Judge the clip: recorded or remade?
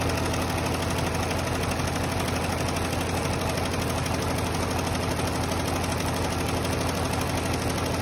recorded